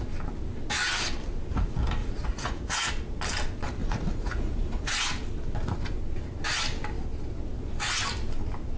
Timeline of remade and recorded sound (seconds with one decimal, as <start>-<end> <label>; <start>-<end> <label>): 0.0-2.0 recorded; 2.0-2.9 remade; 2.9-3.8 recorded; 3.8-4.9 remade; 4.9-8.8 recorded